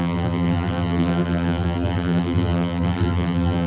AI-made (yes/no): yes